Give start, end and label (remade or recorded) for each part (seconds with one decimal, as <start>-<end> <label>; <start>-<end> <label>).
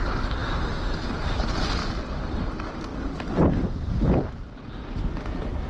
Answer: 0.0-5.7 recorded